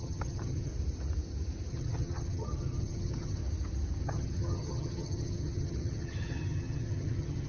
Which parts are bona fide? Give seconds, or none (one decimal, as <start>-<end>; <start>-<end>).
0.7-1.7; 3.4-4.0